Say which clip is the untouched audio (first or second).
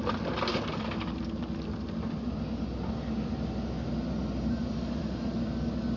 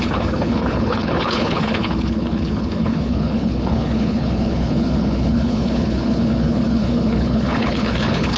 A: first